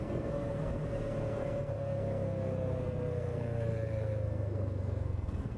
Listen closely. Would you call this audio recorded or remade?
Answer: remade